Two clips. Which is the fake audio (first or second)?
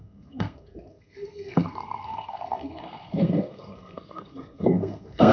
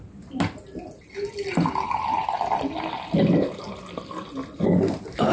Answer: first